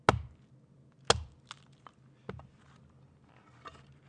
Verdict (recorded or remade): recorded